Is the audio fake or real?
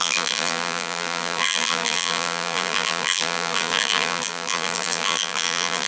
fake